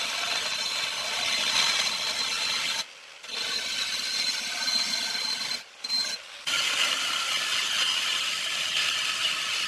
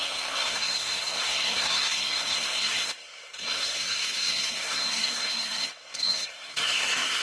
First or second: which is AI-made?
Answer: second